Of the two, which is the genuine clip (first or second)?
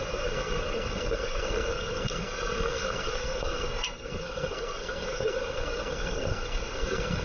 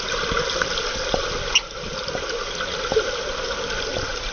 second